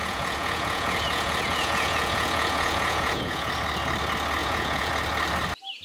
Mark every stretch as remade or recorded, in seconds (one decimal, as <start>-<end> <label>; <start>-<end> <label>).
0.0-3.5 remade; 3.5-4.4 recorded; 4.4-4.9 remade; 4.9-5.8 recorded